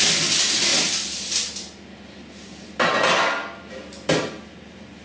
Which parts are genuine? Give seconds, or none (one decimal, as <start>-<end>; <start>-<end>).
0.0-5.0